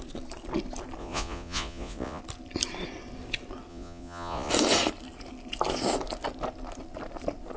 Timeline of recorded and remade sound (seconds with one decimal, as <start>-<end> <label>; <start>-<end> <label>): 0.0-1.0 recorded; 1.0-2.2 remade; 2.2-3.7 recorded; 3.7-4.5 remade; 4.5-7.6 recorded